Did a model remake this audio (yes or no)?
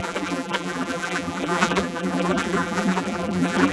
yes